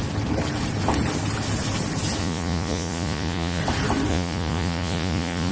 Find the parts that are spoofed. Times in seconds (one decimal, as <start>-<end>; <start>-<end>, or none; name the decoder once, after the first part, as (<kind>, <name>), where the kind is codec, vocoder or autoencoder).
2.2-3.6 (vocoder, Vocos); 4.1-5.5